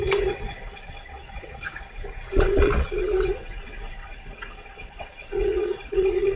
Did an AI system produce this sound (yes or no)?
yes